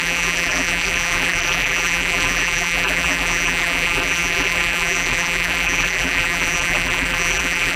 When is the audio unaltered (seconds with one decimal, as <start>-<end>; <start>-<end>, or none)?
none